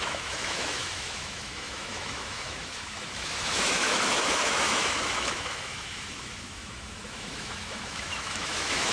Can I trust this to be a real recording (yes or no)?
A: no